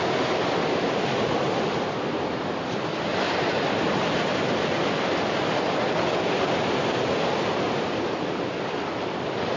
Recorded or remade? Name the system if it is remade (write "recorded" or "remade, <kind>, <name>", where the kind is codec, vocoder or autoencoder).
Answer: recorded